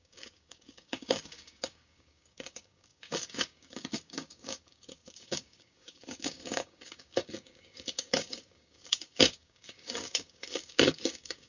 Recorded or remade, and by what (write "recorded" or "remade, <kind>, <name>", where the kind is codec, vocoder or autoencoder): remade, codec, DAC